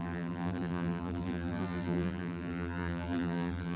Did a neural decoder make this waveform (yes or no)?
yes